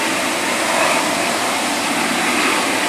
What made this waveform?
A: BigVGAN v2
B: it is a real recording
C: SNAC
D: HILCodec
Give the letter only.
B